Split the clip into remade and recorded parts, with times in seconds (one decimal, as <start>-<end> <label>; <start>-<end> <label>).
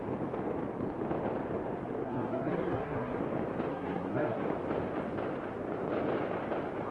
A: 0.0-2.0 recorded; 2.0-3.2 remade; 3.2-3.7 recorded; 3.7-4.4 remade; 4.4-6.9 recorded